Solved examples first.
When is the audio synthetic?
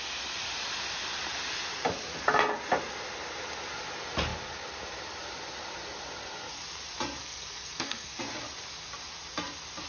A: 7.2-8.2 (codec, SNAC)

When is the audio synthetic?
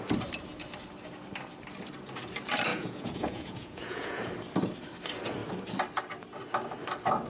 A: 2.7-4.3 (vocoder, Vocos)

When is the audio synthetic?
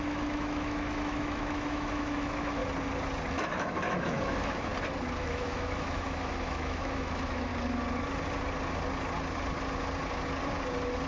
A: 0.0-2.6 (autoencoder, DAC-VAE); 3.3-4.7; 5.2-7.5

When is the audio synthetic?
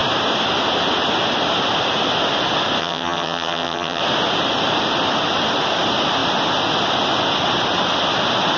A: 2.8-4.0 (vocoder, HiFi-GAN)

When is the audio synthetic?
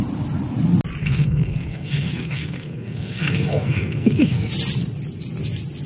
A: 1.0-4.5 (codec, SNAC)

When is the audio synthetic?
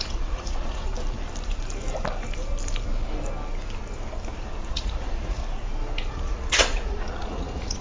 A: 0.0-0.9 (vocoder, Vocos); 4.7-5.4; 6.1-7.8